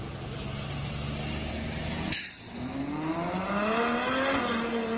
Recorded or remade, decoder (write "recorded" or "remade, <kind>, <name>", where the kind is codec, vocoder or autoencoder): recorded